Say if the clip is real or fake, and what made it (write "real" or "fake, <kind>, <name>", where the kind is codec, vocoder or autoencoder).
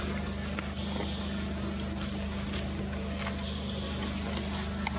real